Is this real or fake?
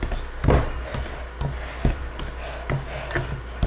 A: real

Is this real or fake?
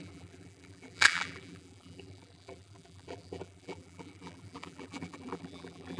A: fake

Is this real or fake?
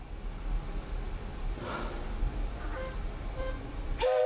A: fake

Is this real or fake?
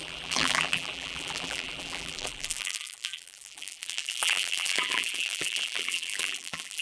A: fake